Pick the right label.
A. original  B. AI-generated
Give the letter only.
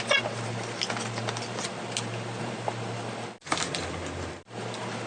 A